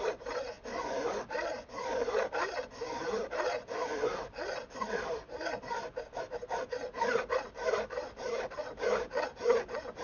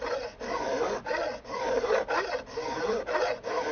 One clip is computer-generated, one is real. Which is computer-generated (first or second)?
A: first